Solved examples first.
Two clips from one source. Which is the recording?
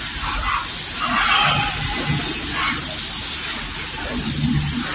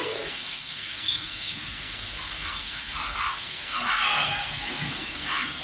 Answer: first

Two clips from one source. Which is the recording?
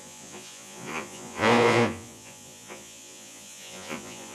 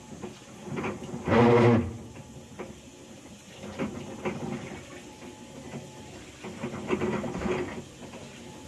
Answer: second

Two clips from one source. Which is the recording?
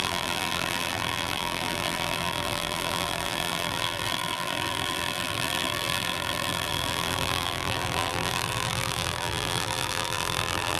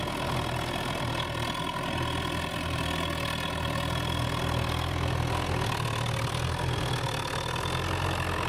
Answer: second